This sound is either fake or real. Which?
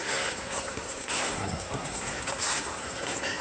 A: fake